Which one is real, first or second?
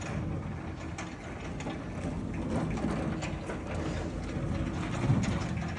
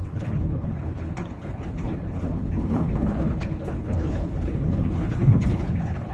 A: first